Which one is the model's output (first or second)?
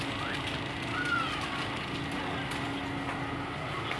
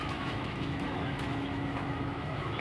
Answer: second